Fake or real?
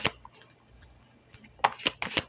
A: real